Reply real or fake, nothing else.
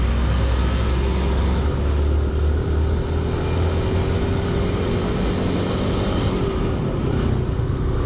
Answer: real